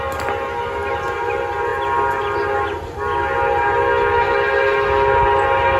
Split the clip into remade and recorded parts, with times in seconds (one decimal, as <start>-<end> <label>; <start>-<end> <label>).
0.0-5.8 recorded